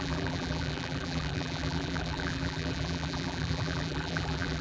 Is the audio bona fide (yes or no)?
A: no